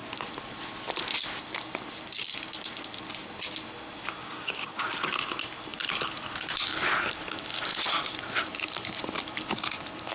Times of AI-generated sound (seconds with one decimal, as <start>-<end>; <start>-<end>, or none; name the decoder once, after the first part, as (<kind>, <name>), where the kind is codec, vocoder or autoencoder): 4.2-4.9 (codec, DAC)

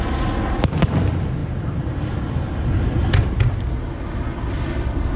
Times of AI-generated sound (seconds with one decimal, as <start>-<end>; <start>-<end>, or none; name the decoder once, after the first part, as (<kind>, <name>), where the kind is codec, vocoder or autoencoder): none

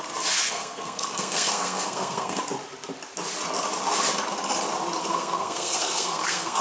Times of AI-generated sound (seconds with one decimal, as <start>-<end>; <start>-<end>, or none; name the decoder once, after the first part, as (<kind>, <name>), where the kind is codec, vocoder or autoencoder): 0.4-2.4 (codec, SNAC); 5.0-6.6